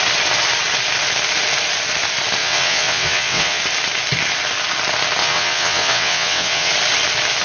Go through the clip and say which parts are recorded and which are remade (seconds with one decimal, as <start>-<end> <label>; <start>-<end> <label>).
0.0-2.4 recorded; 2.4-3.6 remade; 3.6-5.2 recorded; 5.2-6.7 remade; 6.7-7.4 recorded